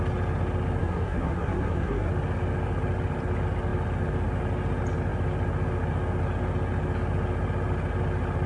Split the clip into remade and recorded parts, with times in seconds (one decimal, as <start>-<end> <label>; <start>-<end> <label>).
0.0-0.8 recorded; 0.8-2.1 remade; 2.1-8.5 recorded